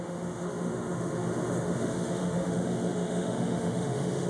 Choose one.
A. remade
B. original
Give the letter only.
A